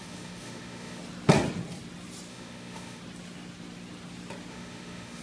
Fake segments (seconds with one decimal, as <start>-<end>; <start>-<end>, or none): 0.0-1.0; 2.3-3.0; 4.5-5.2